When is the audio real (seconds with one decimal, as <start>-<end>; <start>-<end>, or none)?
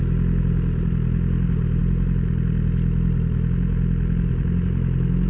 0.0-5.3